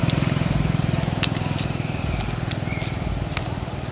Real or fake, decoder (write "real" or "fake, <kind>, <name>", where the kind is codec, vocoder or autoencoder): fake, vocoder, BigVGAN v2